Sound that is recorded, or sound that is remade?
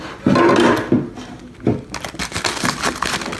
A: recorded